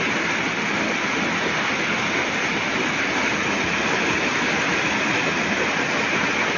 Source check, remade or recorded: recorded